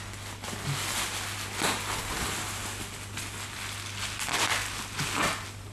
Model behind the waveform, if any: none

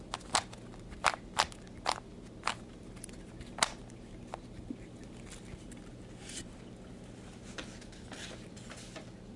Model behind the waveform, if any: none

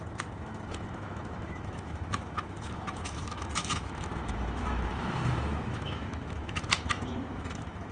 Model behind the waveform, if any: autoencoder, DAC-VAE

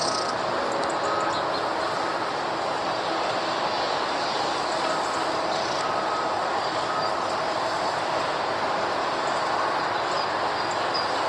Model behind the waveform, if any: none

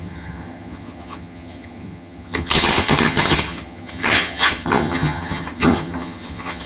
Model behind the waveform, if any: vocoder, HiFi-GAN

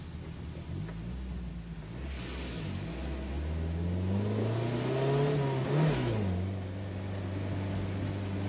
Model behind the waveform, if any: none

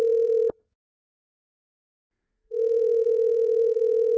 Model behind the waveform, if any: vocoder, Vocos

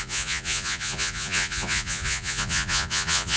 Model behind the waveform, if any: vocoder, Vocos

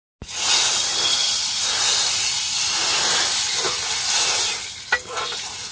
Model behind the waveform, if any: none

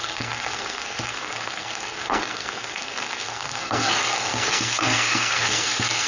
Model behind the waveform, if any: codec, SNAC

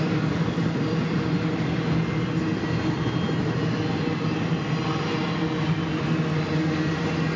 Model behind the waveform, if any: none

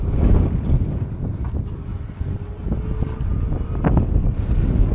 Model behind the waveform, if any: none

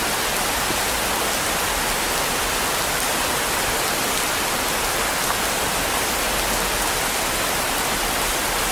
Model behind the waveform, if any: none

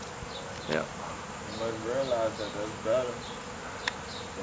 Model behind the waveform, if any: none